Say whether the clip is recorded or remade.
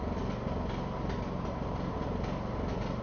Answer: recorded